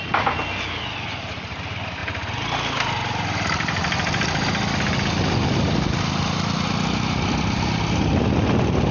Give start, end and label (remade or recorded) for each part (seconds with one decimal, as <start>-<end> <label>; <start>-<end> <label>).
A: 0.0-8.9 recorded